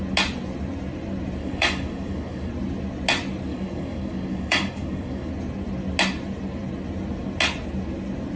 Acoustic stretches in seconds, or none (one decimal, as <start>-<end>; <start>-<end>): 0.0-1.4; 2.5-3.5; 5.3-8.4